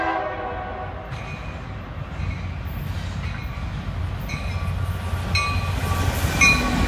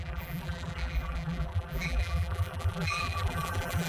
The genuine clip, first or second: first